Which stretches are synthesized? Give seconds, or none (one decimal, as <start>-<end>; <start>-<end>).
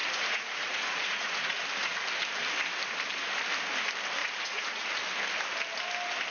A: 0.0-1.6; 4.2-4.9